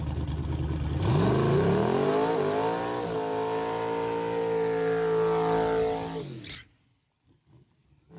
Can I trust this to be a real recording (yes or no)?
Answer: yes